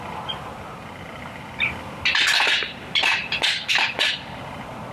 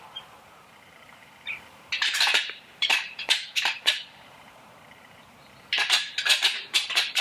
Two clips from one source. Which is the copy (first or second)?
second